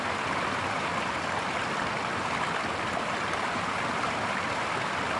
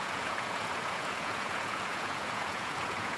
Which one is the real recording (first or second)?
first